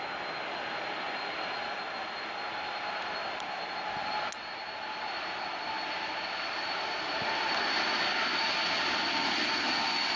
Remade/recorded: recorded